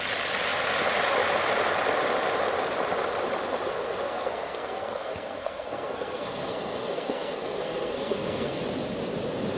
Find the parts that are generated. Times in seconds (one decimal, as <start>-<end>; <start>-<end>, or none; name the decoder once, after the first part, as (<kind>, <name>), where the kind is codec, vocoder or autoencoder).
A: 3.7-8.6 (codec, SNAC)